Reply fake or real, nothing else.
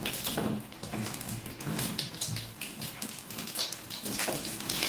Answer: fake